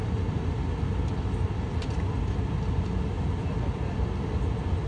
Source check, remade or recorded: recorded